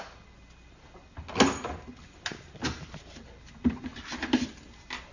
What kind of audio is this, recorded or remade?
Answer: recorded